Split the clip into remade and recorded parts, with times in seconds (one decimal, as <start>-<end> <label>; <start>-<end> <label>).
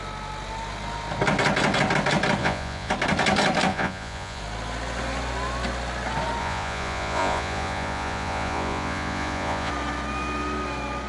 0.0-2.4 recorded; 2.4-2.9 remade; 2.9-3.7 recorded; 3.7-4.4 remade; 4.4-6.4 recorded; 6.4-9.7 remade; 9.7-11.1 recorded